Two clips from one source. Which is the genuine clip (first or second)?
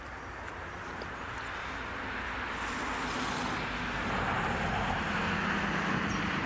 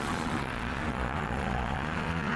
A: first